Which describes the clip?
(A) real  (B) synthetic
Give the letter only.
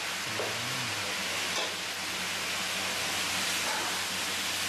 A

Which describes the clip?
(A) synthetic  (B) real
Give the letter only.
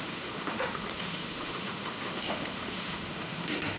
A